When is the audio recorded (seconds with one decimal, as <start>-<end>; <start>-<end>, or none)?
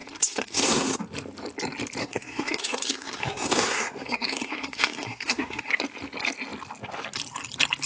1.0-2.0; 5.7-7.9